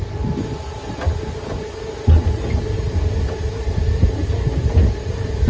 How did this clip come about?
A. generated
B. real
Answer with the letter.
B